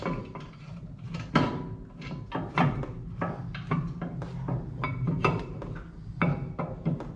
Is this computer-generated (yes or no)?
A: no